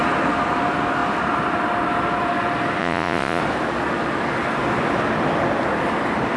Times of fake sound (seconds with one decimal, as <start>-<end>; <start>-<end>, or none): 2.8-3.4